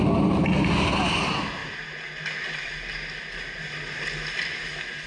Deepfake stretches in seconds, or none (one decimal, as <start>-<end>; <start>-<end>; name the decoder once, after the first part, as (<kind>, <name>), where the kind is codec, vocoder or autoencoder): none